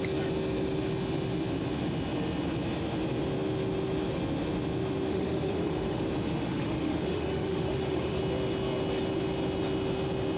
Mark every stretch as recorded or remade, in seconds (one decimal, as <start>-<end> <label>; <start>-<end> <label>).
0.0-5.1 recorded; 5.1-6.0 remade; 6.0-6.5 recorded; 6.5-8.2 remade; 8.2-10.4 recorded